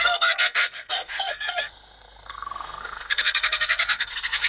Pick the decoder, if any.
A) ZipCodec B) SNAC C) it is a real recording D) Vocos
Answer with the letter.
B